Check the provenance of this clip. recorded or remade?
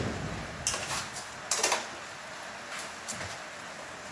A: recorded